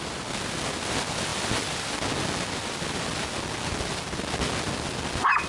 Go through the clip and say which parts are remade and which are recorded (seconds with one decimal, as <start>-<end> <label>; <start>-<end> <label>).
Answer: 0.0-5.5 recorded